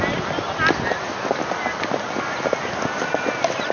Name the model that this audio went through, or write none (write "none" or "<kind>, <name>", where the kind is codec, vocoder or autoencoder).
none